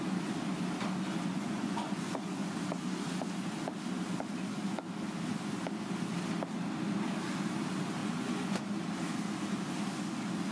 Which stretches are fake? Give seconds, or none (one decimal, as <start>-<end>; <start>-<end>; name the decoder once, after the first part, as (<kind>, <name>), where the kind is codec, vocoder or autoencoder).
1.3-2.5 (vocoder, Vocos); 8.0-8.6